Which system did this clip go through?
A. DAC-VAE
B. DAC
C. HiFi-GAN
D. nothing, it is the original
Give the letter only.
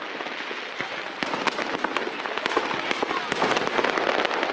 D